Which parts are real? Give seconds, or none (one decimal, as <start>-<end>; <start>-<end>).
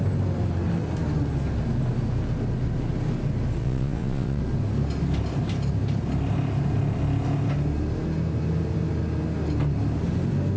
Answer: 0.0-3.6; 4.4-10.6